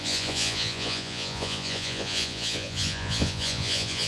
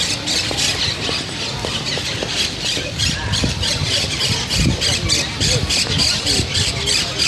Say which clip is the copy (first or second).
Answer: first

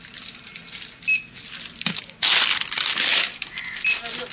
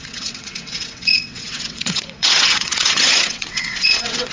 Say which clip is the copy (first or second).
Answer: second